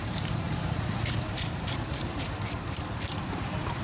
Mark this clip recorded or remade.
remade